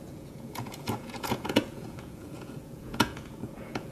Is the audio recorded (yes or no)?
no